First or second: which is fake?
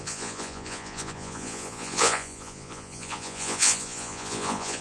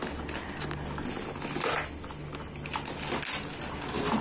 first